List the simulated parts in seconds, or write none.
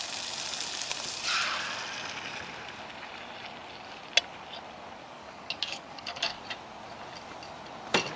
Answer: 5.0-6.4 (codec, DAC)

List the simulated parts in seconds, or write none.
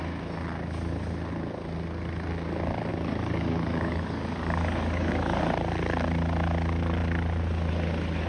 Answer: 2.9-5.4 (codec, DAC)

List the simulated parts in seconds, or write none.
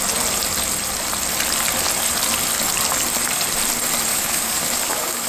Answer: 4.1-5.3 (codec, DAC)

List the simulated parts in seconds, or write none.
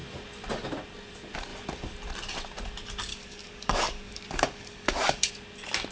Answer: 3.1-5.3 (codec, DAC)